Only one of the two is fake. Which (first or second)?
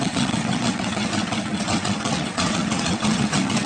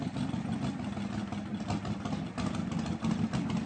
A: first